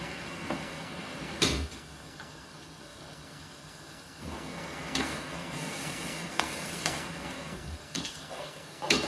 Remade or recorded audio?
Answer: remade